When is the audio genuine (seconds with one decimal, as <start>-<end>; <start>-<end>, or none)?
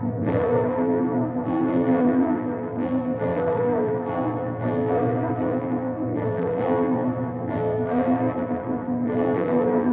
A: none